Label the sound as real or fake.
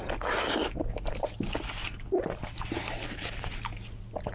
real